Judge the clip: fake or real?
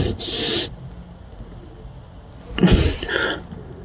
real